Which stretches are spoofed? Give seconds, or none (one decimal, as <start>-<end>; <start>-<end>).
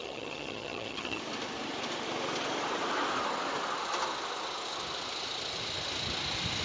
0.0-1.2